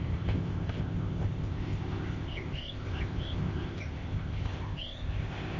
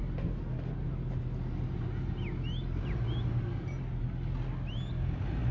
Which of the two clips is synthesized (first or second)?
first